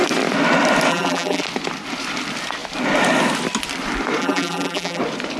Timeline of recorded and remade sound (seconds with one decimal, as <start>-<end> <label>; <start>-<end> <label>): 0.0-0.9 recorded; 0.9-1.4 remade; 1.4-4.2 recorded; 4.2-5.0 remade; 5.0-5.4 recorded